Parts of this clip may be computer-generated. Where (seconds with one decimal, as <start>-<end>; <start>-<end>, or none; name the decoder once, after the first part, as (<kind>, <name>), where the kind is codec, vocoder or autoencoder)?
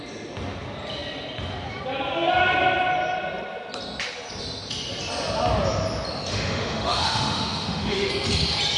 6.3-8.1 (autoencoder, DAC-VAE)